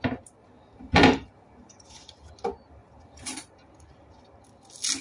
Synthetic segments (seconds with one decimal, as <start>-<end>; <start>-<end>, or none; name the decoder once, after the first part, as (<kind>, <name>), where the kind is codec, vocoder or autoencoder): 0.4-2.3 (vocoder, BigVGAN v2); 2.8-4.3